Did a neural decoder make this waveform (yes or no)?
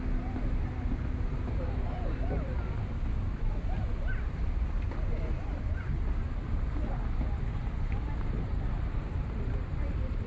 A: no